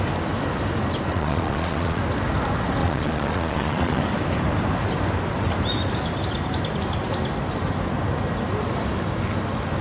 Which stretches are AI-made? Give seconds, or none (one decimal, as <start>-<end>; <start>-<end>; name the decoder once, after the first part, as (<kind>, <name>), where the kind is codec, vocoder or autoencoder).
1.1-2.0 (vocoder, Vocos); 2.8-4.0